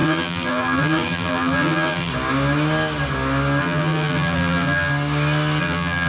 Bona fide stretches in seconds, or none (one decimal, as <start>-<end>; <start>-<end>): 2.1-3.6; 4.9-5.6